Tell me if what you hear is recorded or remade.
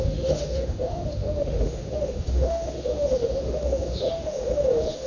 remade